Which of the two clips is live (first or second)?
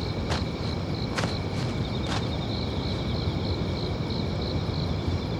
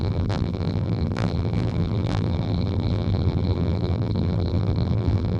first